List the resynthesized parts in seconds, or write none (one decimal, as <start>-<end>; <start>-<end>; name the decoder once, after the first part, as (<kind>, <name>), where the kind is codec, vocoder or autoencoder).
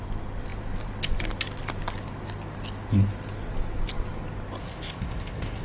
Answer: 4.6-5.6 (codec, ZipCodec)